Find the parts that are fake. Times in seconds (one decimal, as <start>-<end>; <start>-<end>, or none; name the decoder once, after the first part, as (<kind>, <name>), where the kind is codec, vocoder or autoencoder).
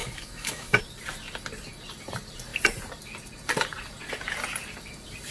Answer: 0.0-0.8 (autoencoder, DAC-VAE)